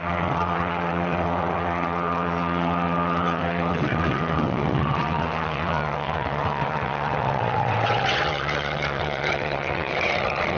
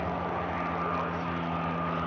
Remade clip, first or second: first